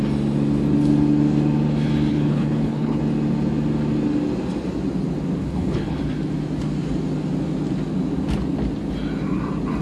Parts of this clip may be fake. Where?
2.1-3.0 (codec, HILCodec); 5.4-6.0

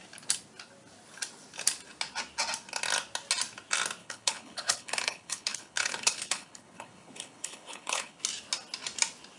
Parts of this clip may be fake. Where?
4.0-8.2 (codec, HILCodec)

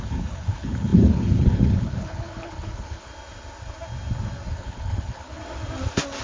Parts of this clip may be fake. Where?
0.0-3.1 (codec, HILCodec); 4.5-5.4

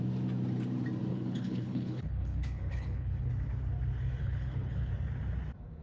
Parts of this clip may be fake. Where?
1.1-3.3 (codec, HILCodec); 4.2-4.9

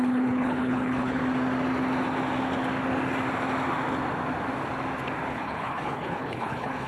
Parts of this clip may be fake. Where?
0.0-1.2 (codec, HILCodec); 5.3-6.9

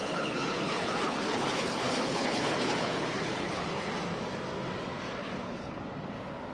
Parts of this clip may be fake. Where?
0.0-3.9 (codec, HILCodec); 5.2-5.8